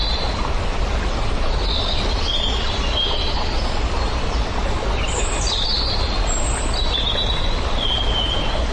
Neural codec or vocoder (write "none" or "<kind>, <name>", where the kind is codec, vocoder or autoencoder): none